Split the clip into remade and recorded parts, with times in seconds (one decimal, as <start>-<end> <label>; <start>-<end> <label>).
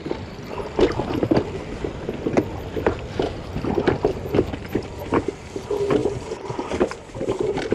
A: 0.0-7.7 recorded